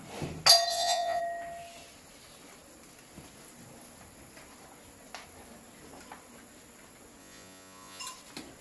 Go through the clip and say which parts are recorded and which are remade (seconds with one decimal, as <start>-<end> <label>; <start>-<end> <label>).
0.0-0.7 recorded; 0.7-1.2 remade; 1.2-7.2 recorded; 7.2-8.0 remade; 8.0-8.6 recorded

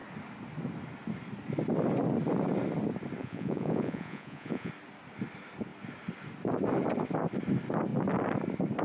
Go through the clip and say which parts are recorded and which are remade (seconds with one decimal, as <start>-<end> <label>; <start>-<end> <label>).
0.0-3.2 recorded; 3.2-4.7 remade; 4.7-8.8 recorded

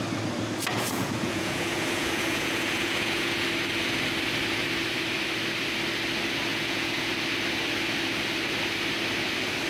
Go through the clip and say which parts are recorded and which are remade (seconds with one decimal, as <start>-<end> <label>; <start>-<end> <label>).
0.0-0.7 recorded; 0.7-3.5 remade; 3.5-6.5 recorded; 6.5-7.1 remade; 7.1-9.7 recorded